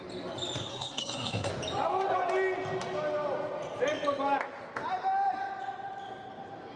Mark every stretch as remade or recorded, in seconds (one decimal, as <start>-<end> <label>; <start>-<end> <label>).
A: 0.0-0.7 recorded; 0.7-1.5 remade; 1.5-6.8 recorded